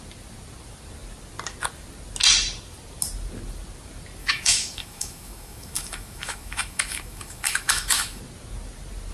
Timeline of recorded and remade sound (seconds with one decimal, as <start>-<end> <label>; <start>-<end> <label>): 0.0-4.2 recorded; 4.2-8.2 remade; 8.2-9.1 recorded